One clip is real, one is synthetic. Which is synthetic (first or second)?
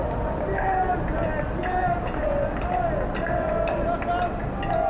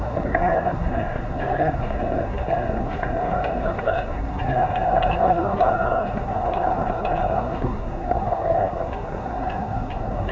second